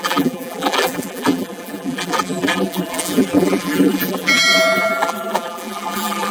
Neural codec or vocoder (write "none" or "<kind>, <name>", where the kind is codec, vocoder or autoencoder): vocoder, BigVGAN v2